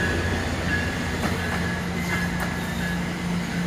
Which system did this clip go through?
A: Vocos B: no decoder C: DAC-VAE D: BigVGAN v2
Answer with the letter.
B